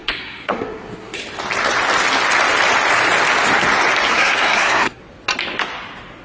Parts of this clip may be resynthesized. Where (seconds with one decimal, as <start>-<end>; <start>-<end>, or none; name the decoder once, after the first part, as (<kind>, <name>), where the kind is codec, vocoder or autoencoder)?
0.0-1.2 (codec, SNAC); 4.1-5.0